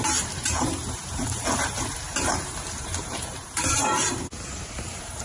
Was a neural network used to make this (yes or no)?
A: yes